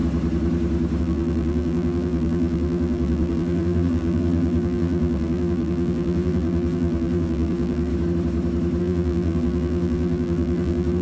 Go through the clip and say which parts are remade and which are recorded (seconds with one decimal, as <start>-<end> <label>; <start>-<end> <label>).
0.0-1.0 recorded; 1.0-7.9 remade; 7.9-8.8 recorded; 8.8-11.0 remade